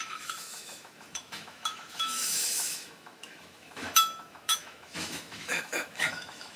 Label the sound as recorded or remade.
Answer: remade